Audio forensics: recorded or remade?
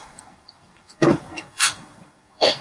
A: remade